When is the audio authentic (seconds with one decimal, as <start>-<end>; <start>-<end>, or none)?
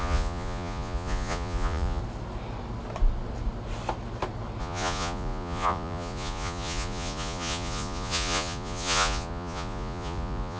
2.0-4.6